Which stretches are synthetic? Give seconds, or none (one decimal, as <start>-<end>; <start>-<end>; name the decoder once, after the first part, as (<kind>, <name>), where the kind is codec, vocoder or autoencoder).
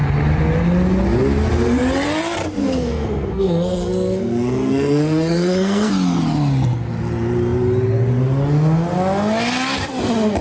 2.6-5.9 (codec, SNAC)